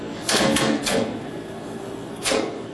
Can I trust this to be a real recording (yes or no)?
no